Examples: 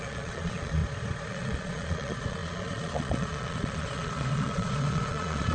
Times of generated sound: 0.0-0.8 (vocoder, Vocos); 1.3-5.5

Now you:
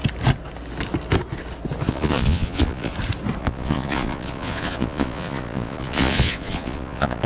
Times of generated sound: 1.9-2.9 (vocoder, Vocos); 3.4-7.3

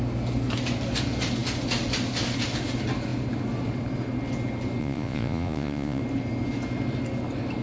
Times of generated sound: 4.8-6.0 (vocoder, Vocos)

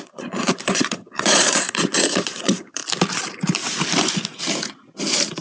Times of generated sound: 0.0-2.8 (vocoder, Vocos)

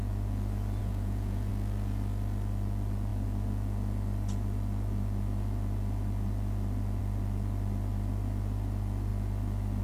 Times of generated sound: 0.8-1.5 (vocoder, Vocos)

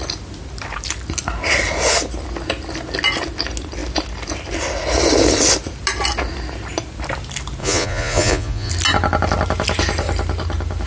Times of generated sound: 7.6-8.7 (vocoder, Vocos)

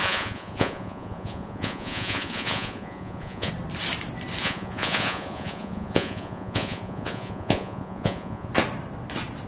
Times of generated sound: 0.0-3.5 (vocoder, Vocos); 4.4-8.5

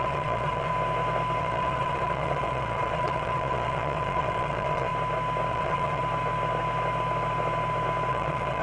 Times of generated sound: 0.0-0.7 (vocoder, Vocos); 1.4-4.9; 5.5-6.0; 8.1-8.6